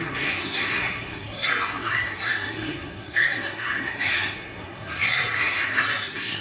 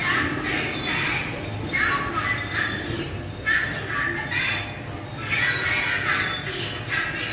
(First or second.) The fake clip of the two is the first